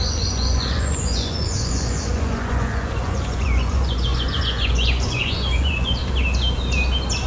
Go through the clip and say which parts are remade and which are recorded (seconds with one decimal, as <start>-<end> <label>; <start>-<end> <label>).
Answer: 0.0-6.0 remade; 6.0-7.3 recorded